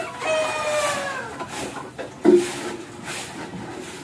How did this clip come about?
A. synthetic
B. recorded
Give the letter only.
B